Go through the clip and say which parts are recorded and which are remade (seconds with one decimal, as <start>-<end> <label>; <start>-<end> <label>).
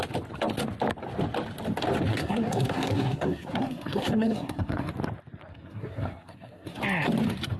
0.0-2.1 recorded; 2.1-4.9 remade; 4.9-5.5 recorded; 5.5-6.8 remade; 6.8-7.6 recorded